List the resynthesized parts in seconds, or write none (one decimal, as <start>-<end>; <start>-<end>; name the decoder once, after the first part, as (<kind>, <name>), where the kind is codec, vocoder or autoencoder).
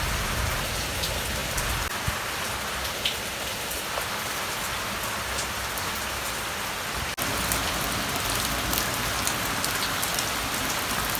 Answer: none